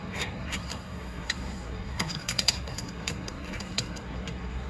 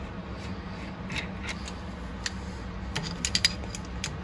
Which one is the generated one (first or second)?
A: first